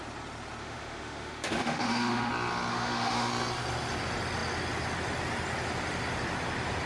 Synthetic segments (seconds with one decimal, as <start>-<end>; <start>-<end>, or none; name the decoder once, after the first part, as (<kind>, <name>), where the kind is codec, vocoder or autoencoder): 0.6-2.3 (autoencoder, DAC-VAE); 2.7-3.3